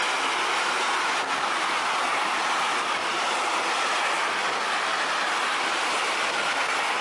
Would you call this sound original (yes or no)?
yes